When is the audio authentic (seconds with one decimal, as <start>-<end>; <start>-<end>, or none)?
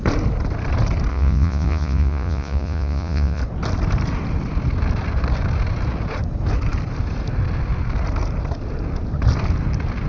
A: 0.0-1.1; 3.4-10.1